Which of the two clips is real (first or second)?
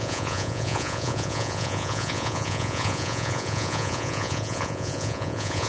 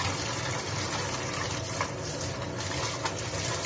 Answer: second